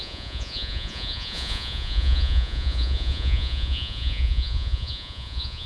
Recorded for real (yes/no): no